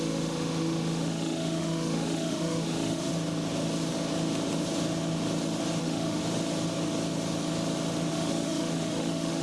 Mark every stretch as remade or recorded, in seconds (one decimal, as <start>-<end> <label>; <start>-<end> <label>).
0.0-3.1 remade; 3.1-5.8 recorded; 5.8-6.2 remade; 6.2-8.1 recorded; 8.1-9.4 remade

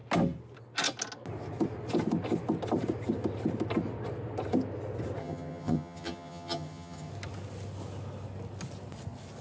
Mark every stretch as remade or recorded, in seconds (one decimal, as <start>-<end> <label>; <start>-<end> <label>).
0.0-5.2 recorded; 5.2-7.1 remade; 7.1-9.4 recorded

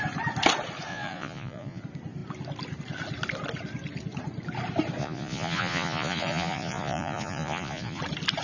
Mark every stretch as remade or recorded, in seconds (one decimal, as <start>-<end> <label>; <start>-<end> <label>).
0.0-0.9 recorded; 0.9-1.8 remade; 1.8-5.0 recorded; 5.0-8.0 remade; 8.0-8.4 recorded